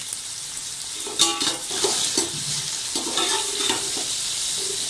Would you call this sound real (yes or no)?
yes